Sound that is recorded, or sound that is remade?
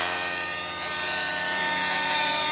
remade